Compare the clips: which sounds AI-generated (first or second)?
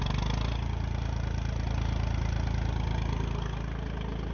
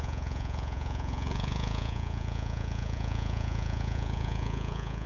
second